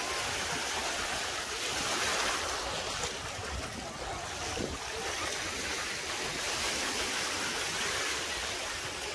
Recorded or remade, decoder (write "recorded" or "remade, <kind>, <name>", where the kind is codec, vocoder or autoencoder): recorded